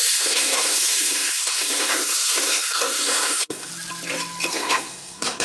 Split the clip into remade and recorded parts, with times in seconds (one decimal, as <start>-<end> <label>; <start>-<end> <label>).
0.0-3.7 remade; 3.7-4.5 recorded; 4.5-5.4 remade